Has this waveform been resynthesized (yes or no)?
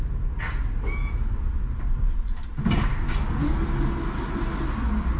no